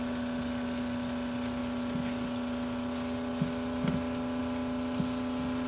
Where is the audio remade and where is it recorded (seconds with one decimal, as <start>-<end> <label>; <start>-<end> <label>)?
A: 0.0-5.7 recorded